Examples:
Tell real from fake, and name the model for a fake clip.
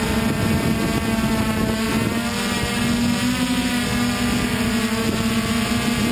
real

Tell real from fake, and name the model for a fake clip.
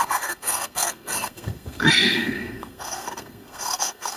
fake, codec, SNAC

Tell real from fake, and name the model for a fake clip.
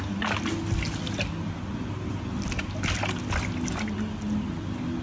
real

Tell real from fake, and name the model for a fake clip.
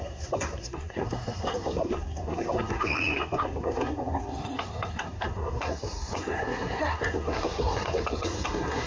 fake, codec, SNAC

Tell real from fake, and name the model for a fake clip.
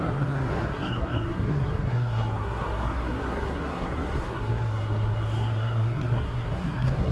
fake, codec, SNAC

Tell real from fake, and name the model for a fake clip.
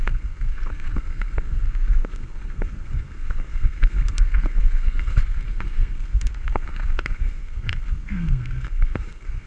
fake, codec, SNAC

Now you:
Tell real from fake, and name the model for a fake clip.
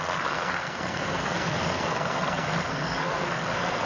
fake, codec, SNAC